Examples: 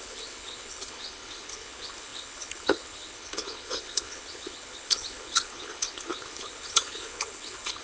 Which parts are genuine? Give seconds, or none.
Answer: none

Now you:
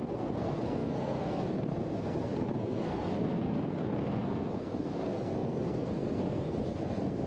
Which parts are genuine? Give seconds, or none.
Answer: none

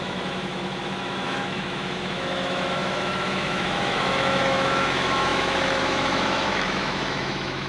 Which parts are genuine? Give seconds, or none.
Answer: none

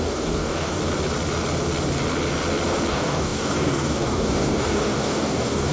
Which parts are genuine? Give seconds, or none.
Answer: 0.8-2.9

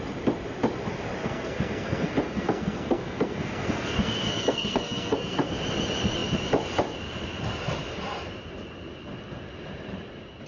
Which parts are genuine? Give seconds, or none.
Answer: 0.0-1.2; 5.5-10.5

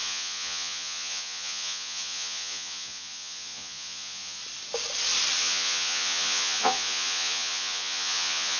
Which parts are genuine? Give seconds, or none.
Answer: 4.4-5.4

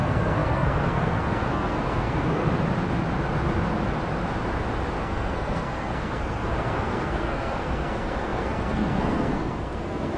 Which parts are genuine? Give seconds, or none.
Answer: 2.4-5.0